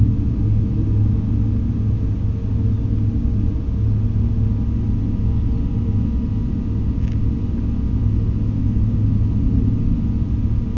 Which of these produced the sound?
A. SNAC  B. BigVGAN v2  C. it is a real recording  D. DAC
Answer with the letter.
C